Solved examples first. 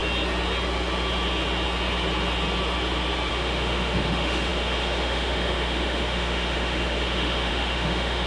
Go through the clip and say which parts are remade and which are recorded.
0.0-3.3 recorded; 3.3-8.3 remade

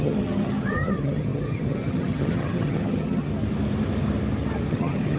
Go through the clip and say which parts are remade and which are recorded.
0.0-3.3 remade; 3.3-4.7 recorded; 4.7-5.2 remade

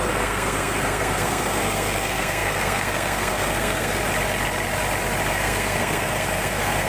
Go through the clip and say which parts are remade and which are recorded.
0.0-4.0 remade; 4.0-5.3 recorded; 5.3-6.9 remade